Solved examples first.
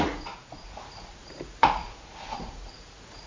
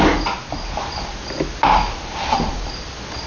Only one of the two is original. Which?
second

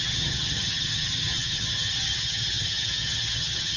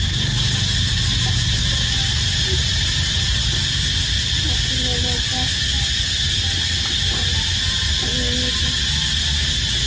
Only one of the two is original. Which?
second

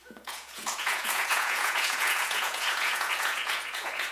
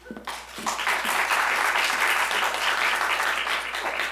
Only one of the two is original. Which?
second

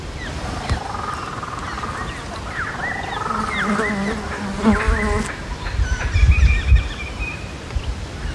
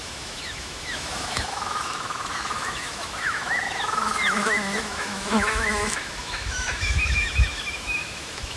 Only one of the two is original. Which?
first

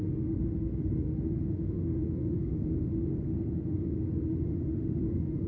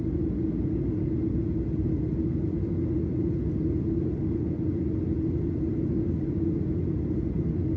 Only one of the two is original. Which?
second